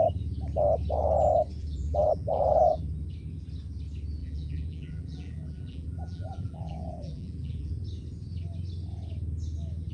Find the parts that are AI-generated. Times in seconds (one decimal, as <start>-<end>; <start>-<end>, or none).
1.6-2.8; 4.2-7.7